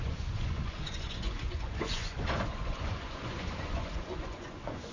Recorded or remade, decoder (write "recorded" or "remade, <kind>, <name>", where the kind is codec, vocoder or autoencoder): remade, vocoder, Vocos